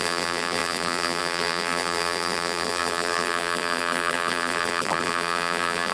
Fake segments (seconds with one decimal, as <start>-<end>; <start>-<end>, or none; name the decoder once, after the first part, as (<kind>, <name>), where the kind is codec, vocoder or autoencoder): 0.0-5.9 (vocoder, BigVGAN v2)